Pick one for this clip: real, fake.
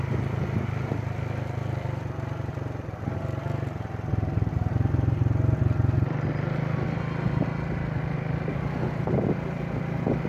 real